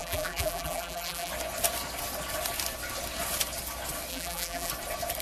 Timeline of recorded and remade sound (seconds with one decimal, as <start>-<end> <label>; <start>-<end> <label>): 0.0-1.3 remade; 1.3-4.1 recorded; 4.1-4.7 remade; 4.7-5.2 recorded